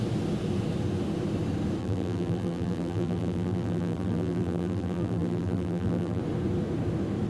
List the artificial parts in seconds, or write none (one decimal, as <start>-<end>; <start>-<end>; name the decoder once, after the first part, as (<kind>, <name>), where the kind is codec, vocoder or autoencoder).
1.8-6.2 (vocoder, BigVGAN v2)